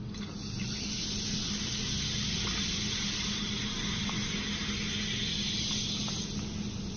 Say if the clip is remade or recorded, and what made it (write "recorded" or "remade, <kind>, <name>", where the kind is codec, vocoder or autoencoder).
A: recorded